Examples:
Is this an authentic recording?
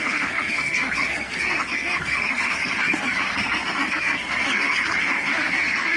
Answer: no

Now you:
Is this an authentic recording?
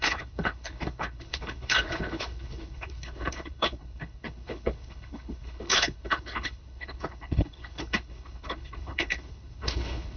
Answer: no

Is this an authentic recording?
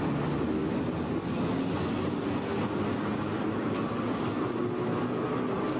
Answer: yes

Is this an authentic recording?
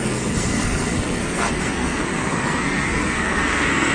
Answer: no